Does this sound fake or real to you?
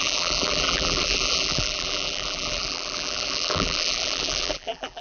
fake